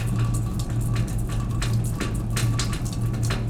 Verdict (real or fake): real